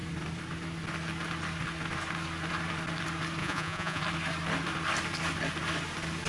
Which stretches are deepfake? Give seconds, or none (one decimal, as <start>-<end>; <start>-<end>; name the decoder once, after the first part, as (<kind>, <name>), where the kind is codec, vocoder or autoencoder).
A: 3.4-4.0 (vocoder, Vocos)